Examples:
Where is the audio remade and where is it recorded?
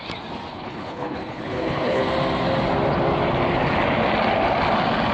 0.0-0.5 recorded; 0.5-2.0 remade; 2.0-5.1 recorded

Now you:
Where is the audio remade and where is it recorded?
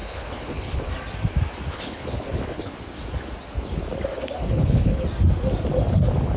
0.0-0.9 remade; 0.9-1.7 recorded; 1.7-2.7 remade; 2.7-4.1 recorded; 4.1-5.0 remade; 5.0-6.4 recorded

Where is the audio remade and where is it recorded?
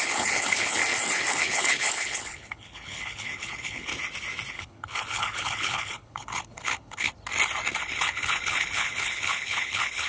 0.0-0.8 remade; 0.8-1.3 recorded; 1.3-3.9 remade; 3.9-4.5 recorded; 4.5-7.1 remade; 7.1-7.8 recorded; 7.8-10.1 remade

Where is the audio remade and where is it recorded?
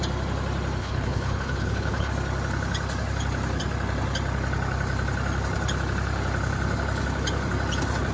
0.0-0.8 recorded; 0.8-2.1 remade; 2.1-8.1 recorded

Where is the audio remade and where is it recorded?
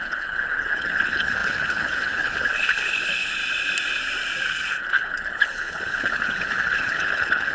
0.0-3.4 remade; 3.4-4.5 recorded; 4.5-7.5 remade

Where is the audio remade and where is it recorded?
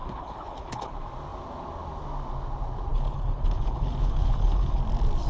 0.0-0.9 remade; 0.9-2.9 recorded; 2.9-4.8 remade; 4.8-5.3 recorded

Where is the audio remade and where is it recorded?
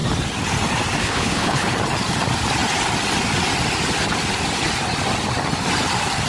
0.0-1.0 recorded; 1.0-1.7 remade; 1.7-6.3 recorded